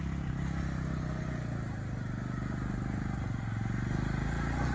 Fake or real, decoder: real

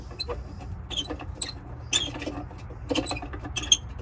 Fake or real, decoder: real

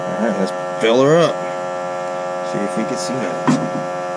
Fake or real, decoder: real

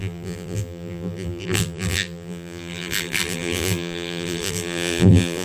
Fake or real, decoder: fake, vocoder, BigVGAN v2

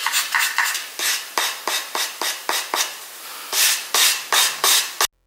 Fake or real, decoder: real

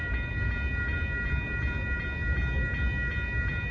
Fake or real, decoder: real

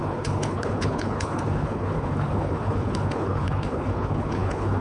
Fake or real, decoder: fake, codec, HILCodec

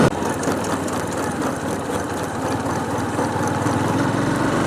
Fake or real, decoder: real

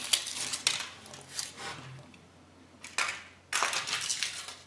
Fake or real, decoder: real